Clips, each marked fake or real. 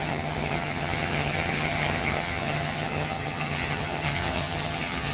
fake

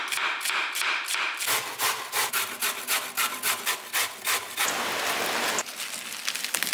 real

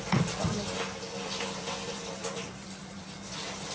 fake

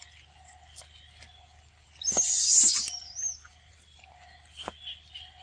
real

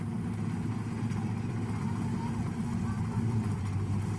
real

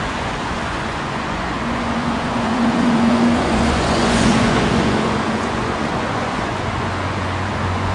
fake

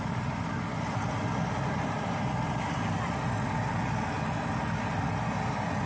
real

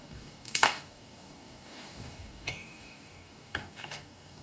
fake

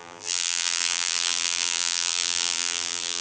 fake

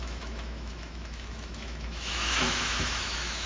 fake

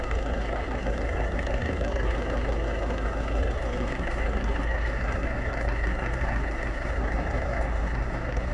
fake